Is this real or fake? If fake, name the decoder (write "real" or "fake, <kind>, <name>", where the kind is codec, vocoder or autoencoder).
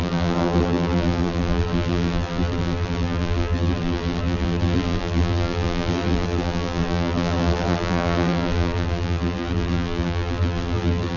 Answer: fake, vocoder, BigVGAN v2